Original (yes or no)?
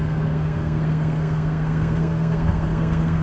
no